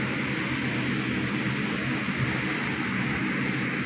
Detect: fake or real real